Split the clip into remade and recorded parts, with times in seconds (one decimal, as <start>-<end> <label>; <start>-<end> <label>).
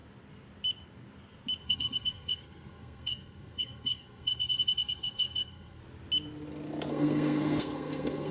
0.0-1.6 recorded; 1.6-5.8 remade; 5.8-6.9 recorded; 6.9-8.3 remade